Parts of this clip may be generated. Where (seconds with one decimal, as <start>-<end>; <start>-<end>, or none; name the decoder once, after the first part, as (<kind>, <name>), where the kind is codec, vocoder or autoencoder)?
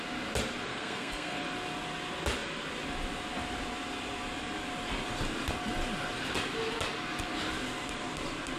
0.7-1.4 (codec, SNAC)